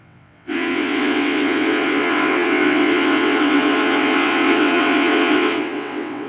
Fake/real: fake